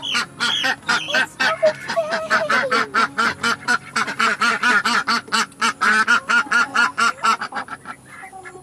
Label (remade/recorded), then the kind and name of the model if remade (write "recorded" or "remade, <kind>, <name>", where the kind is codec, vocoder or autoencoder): remade, vocoder, BigVGAN v2